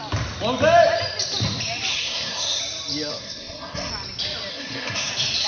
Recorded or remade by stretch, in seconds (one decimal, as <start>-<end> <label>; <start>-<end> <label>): 0.0-1.9 recorded; 1.9-2.6 remade; 2.6-3.1 recorded; 3.1-3.9 remade; 3.9-4.5 recorded; 4.5-5.1 remade; 5.1-5.5 recorded